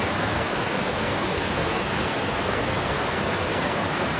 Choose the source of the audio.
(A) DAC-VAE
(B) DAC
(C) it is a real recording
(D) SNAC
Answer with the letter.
D